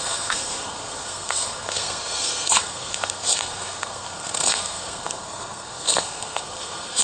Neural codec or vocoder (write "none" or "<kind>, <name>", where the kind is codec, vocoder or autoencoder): codec, SNAC